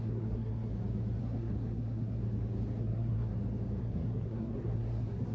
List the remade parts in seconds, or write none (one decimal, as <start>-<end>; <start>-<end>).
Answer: 0.0-0.7; 1.2-2.2; 2.8-3.3; 3.8-5.3